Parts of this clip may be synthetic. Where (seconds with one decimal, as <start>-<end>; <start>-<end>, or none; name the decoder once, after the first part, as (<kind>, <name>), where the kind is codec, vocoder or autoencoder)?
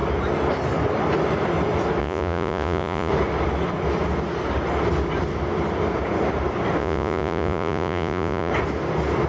2.0-3.1 (vocoder, Vocos); 6.8-8.5